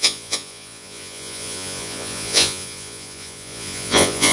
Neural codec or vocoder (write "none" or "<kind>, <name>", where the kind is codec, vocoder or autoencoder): vocoder, Vocos